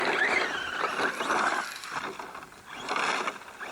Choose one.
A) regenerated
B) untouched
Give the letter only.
B